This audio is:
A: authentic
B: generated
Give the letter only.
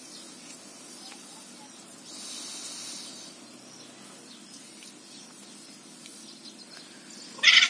A